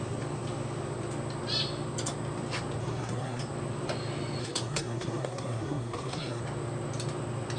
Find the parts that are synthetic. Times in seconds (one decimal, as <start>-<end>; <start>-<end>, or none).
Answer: 2.8-3.4; 4.4-6.4